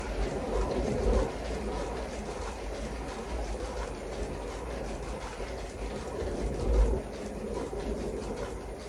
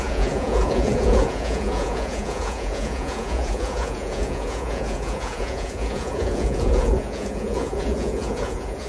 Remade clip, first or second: second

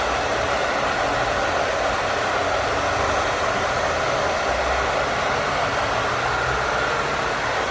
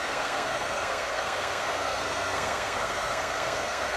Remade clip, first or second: second